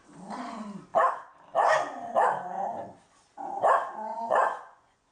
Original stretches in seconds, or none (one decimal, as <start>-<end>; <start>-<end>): 0.0-4.1